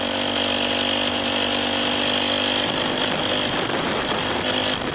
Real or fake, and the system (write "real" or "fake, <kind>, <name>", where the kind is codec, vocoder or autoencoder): real